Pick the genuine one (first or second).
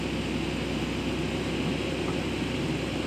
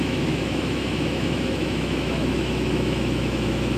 first